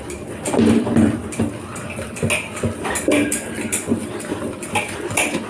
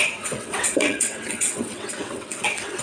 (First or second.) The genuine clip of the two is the first